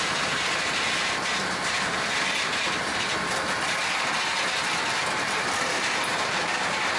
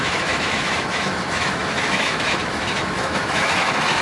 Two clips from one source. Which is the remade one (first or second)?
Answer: second